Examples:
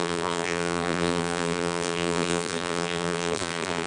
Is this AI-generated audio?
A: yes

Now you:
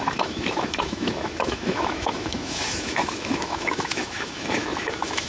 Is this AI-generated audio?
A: yes